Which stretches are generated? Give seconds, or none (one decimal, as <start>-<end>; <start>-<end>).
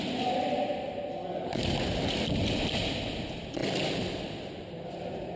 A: 3.6-5.0